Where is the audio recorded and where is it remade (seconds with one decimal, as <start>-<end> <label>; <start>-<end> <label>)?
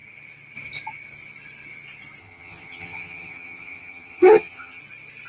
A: 0.0-2.2 recorded; 2.2-4.8 remade; 4.8-5.3 recorded